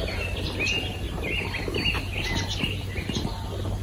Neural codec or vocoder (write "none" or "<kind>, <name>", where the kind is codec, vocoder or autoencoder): none